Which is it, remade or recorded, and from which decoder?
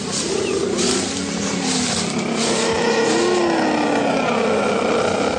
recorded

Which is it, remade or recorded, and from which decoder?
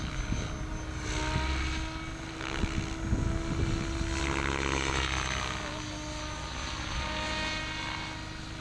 recorded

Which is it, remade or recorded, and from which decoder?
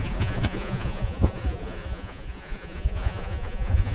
remade, vocoder, Vocos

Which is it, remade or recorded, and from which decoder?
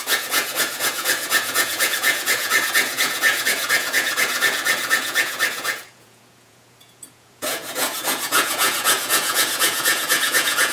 remade, vocoder, Vocos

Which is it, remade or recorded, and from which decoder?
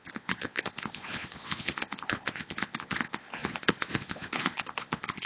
remade, vocoder, Vocos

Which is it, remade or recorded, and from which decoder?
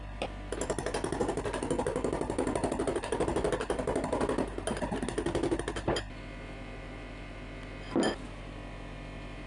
recorded